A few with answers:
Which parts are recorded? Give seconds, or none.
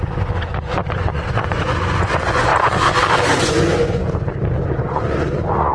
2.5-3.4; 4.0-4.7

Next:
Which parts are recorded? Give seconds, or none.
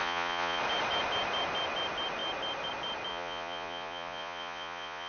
0.6-3.1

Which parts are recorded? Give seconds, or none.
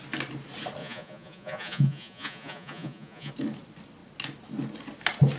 0.0-0.8; 3.3-5.4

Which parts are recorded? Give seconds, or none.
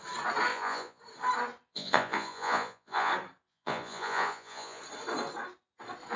0.0-0.5; 1.0-1.7; 3.1-3.5; 4.8-6.2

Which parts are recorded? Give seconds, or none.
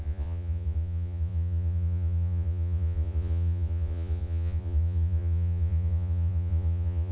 none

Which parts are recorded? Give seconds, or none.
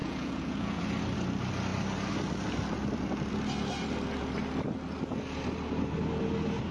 0.8-6.7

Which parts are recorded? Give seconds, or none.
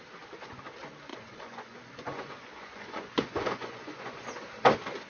0.0-1.1; 4.2-5.1